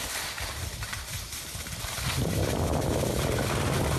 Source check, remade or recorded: recorded